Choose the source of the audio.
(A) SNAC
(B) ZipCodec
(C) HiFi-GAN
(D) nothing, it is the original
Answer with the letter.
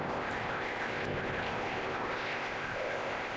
B